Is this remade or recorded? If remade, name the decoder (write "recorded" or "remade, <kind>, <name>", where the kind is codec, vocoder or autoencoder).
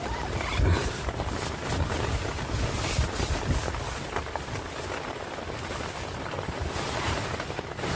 recorded